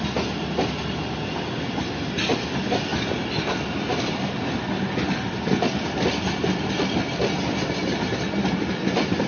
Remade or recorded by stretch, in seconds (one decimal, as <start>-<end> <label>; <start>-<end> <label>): 0.0-8.1 recorded; 8.1-8.6 remade; 8.6-9.3 recorded